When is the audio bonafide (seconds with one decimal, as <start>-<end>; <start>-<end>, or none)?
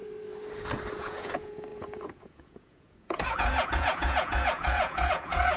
0.0-1.0